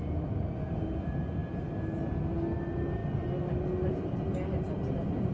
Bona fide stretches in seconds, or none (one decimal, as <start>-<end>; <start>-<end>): 0.0-5.3